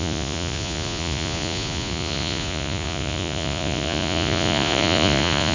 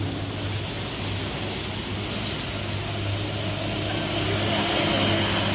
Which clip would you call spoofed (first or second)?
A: first